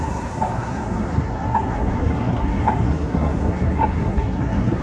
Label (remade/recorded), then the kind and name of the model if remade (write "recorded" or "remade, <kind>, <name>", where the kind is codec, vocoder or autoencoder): remade, codec, SNAC